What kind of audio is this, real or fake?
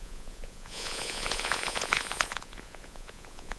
fake